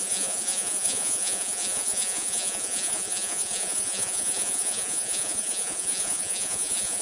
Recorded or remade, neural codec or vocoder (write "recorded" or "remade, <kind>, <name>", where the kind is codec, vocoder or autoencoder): remade, vocoder, Vocos